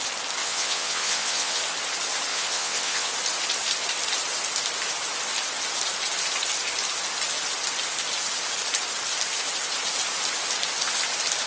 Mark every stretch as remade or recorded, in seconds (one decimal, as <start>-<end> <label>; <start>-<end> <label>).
0.0-0.4 recorded; 0.4-1.6 remade; 1.6-2.3 recorded; 2.3-3.1 remade; 3.1-11.5 recorded